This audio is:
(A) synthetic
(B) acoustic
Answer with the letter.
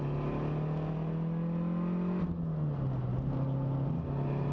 B